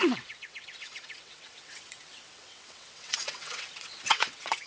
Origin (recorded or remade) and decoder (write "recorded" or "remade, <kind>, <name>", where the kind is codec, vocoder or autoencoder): remade, vocoder, WaveNeXt